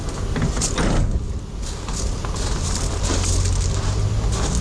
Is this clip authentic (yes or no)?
yes